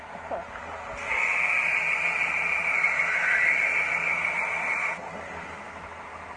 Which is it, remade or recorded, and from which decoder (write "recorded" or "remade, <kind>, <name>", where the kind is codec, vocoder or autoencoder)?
recorded